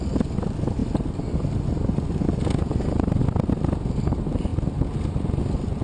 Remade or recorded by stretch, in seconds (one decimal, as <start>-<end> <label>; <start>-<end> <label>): 0.0-5.8 recorded